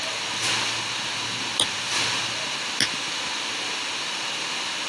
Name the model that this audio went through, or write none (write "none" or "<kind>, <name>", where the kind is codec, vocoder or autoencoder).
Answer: none